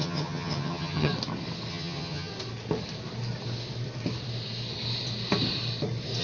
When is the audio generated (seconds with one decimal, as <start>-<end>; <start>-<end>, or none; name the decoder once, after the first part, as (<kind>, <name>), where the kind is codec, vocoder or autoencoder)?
0.0-1.1 (vocoder, HiFi-GAN); 1.7-2.3